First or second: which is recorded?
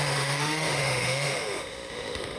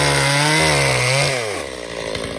second